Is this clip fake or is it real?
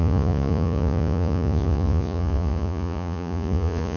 fake